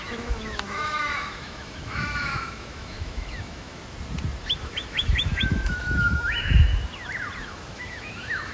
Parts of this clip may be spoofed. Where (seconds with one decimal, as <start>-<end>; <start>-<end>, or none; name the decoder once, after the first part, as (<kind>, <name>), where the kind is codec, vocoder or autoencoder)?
0.0-3.8 (autoencoder, DAC-VAE); 4.4-6.7; 7.4-8.5